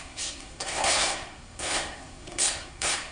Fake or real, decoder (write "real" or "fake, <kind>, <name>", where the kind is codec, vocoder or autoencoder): fake, codec, SNAC